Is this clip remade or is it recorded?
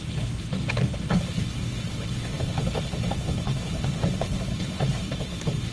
remade